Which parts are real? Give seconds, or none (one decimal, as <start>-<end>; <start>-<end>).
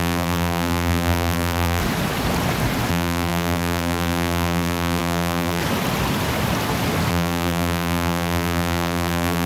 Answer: 1.8-2.9; 5.6-7.1